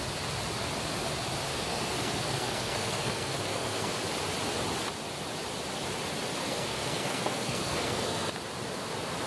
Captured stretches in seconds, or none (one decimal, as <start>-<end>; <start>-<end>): 0.0-1.5; 4.0-6.4; 8.3-9.3